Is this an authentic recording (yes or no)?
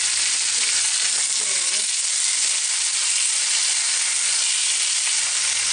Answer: yes